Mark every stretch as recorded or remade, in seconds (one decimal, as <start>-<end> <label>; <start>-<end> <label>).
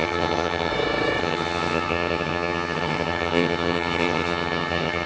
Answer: 0.0-0.7 remade; 0.7-1.2 recorded; 1.2-5.1 remade